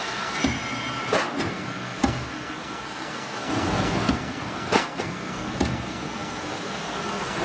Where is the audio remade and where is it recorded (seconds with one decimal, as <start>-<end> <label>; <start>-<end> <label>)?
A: 0.0-0.4 remade; 0.4-1.5 recorded; 1.5-7.4 remade